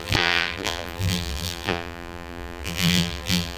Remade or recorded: remade